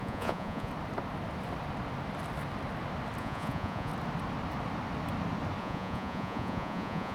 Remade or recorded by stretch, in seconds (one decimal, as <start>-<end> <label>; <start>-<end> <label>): 0.0-0.7 remade; 0.7-3.2 recorded; 3.2-3.9 remade; 3.9-5.6 recorded; 5.6-7.1 remade